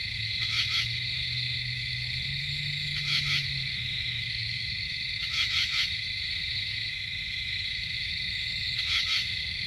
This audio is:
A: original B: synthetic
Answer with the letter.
B